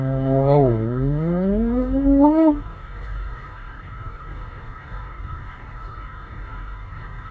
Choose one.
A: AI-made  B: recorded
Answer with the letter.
A